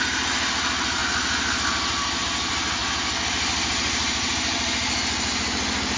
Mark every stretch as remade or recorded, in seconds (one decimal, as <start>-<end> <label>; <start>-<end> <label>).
0.0-1.0 remade; 1.0-2.2 recorded; 2.2-2.8 remade; 2.8-3.7 recorded; 3.7-6.0 remade